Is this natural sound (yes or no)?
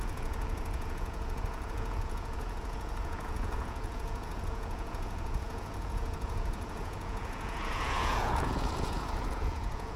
no